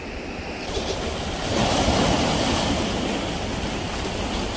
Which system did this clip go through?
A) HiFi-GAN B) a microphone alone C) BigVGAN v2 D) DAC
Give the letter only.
B